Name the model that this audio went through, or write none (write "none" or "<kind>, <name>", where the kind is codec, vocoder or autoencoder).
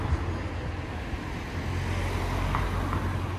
none